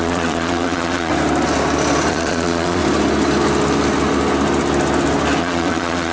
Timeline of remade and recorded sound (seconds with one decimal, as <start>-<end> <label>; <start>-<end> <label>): 0.0-1.1 remade; 1.1-2.1 recorded; 2.1-2.8 remade; 2.8-5.4 recorded; 5.4-6.1 remade